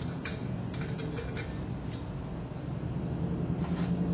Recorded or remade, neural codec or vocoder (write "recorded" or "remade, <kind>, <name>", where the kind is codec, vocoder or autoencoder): recorded